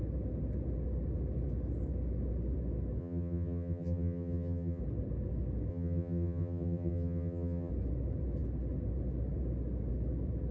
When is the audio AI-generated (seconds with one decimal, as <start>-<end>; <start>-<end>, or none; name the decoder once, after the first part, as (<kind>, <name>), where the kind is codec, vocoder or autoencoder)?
3.0-4.8 (vocoder, HiFi-GAN); 5.7-7.7